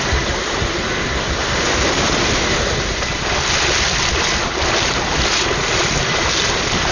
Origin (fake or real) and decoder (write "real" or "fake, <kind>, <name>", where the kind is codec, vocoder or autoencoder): real